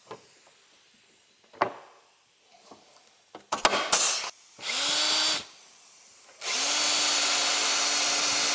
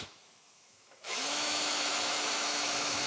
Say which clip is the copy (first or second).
second